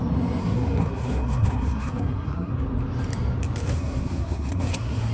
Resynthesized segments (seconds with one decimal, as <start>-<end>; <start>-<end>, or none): 0.4-2.5; 3.7-5.1